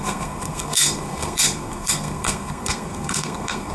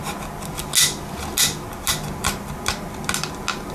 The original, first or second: second